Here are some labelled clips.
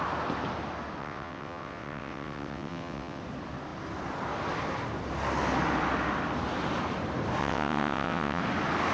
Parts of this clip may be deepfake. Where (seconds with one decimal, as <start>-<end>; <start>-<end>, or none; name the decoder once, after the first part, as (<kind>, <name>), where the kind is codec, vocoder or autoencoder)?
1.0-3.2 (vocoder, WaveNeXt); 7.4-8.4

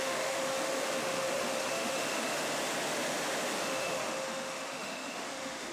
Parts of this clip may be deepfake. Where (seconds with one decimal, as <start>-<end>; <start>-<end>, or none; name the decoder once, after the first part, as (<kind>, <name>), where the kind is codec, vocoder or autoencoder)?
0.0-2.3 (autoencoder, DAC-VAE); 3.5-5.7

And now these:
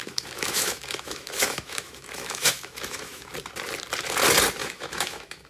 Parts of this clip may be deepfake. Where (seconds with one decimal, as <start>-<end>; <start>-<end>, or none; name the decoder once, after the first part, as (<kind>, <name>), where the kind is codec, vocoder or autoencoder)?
0.0-3.3 (autoencoder, DAC-VAE); 4.6-5.5